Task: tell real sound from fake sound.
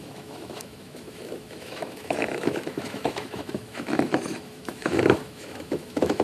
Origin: fake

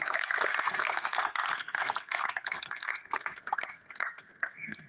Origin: fake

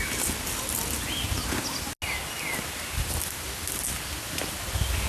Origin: real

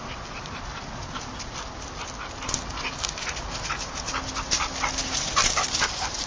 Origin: real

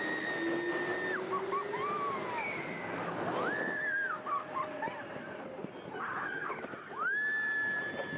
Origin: real